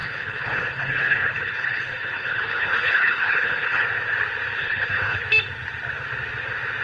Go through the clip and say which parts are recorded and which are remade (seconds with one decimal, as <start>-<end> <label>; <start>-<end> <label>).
0.0-3.8 remade; 3.8-4.6 recorded; 4.6-5.2 remade; 5.2-6.8 recorded